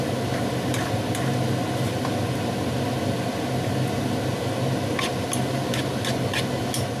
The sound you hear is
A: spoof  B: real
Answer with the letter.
B